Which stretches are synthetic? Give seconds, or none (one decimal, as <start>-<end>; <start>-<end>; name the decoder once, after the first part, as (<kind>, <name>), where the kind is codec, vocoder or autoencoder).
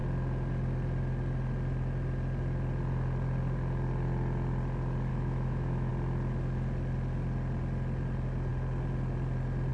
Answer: 5.1-5.9 (autoencoder, DAC-VAE)